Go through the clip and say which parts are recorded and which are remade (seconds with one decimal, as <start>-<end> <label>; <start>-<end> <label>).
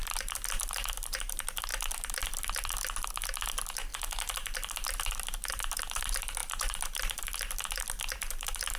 0.0-8.8 remade